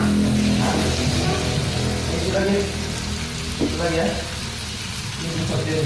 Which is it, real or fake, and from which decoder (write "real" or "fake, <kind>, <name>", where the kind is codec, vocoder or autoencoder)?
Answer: real